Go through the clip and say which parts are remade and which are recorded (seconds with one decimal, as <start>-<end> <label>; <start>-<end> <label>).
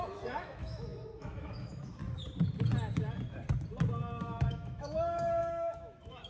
0.0-2.0 remade; 2.0-4.2 recorded; 4.2-6.3 remade